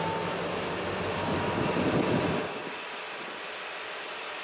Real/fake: real